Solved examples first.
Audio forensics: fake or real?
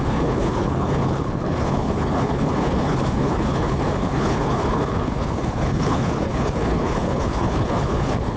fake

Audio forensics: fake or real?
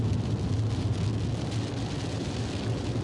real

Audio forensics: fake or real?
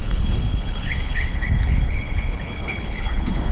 fake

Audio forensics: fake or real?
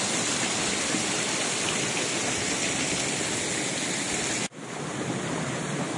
real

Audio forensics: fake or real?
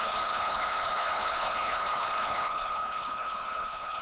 fake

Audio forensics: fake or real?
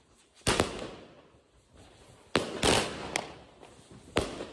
real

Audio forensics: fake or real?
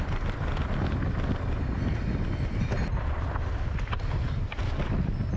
real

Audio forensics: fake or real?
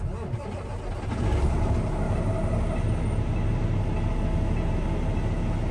real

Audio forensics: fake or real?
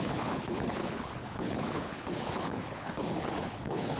fake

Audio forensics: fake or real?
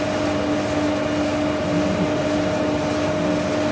real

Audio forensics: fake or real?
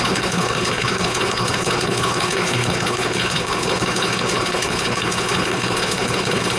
fake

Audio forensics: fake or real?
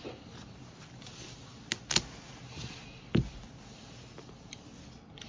real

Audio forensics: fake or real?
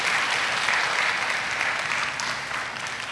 real